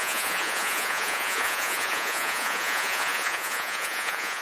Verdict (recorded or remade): remade